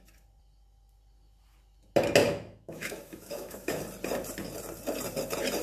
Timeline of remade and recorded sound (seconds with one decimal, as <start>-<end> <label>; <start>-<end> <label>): 0.0-2.2 recorded; 2.2-3.8 remade; 3.8-5.6 recorded